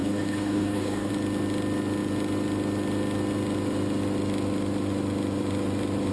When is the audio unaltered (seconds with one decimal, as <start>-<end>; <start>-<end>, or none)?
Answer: 1.1-6.1